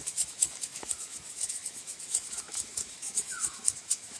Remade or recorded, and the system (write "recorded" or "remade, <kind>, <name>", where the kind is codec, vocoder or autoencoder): remade, autoencoder, DAC-VAE